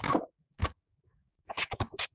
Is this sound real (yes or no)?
no